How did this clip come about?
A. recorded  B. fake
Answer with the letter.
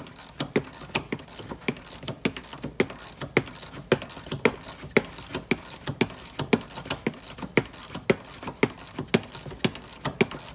A